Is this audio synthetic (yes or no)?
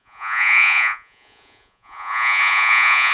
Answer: yes